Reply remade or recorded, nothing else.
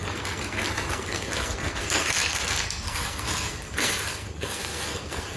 remade